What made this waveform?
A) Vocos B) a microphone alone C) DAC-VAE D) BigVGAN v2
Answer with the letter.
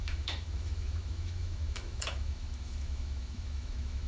C